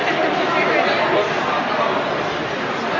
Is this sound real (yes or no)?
yes